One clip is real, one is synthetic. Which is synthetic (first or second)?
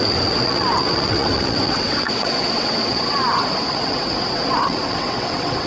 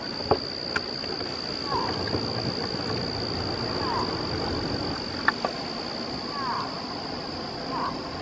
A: first